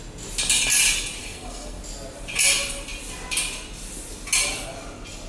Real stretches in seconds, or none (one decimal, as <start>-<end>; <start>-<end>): 0.0-1.2; 1.8-5.3